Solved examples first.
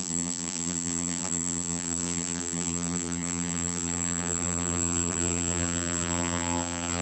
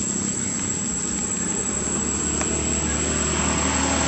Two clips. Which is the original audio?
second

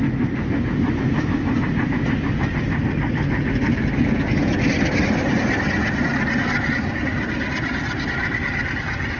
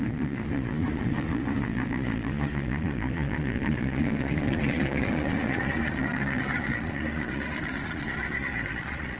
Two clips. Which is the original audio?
first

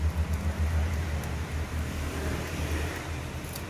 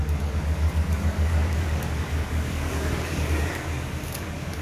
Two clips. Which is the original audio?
first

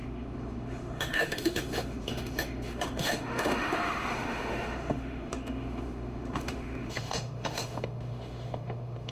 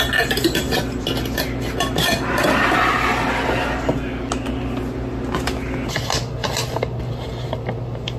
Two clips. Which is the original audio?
second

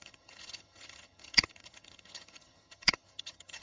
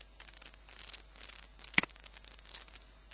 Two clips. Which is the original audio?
second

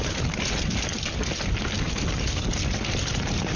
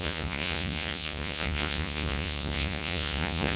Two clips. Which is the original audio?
first